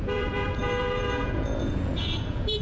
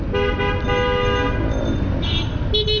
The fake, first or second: first